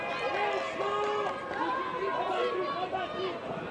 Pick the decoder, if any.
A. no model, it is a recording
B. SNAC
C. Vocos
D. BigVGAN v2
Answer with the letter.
A